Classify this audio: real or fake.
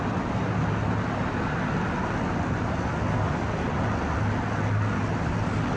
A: real